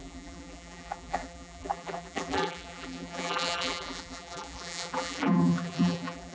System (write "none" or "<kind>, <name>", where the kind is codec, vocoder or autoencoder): vocoder, BigVGAN v2